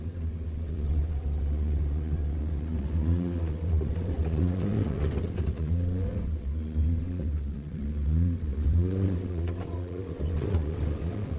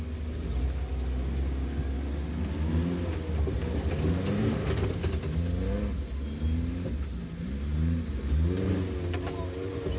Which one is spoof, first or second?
first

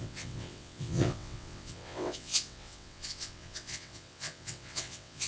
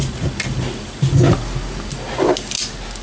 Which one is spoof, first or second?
first